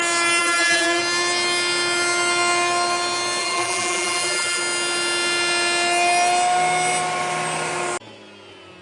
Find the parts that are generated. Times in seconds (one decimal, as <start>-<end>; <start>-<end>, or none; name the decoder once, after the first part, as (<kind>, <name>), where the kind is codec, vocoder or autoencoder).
0.4-1.0 (vocoder, BigVGAN v2); 3.4-4.6